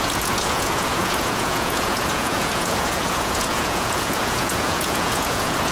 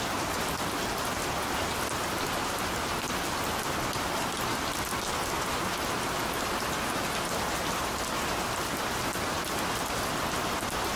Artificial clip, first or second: first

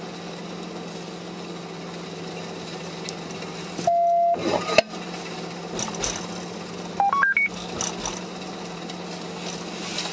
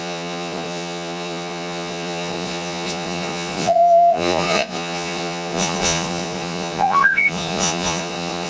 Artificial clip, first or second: second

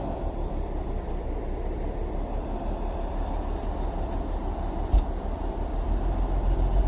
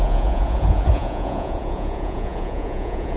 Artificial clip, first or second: second